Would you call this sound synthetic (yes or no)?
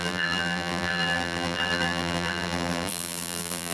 yes